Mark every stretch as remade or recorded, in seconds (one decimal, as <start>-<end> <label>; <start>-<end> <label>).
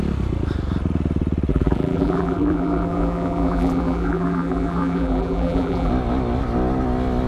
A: 0.0-1.5 recorded; 1.5-5.9 remade; 5.9-7.3 recorded